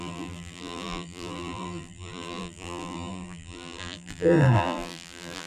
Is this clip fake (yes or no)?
yes